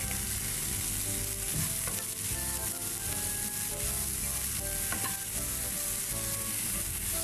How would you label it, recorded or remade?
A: recorded